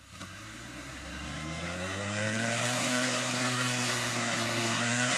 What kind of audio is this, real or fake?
fake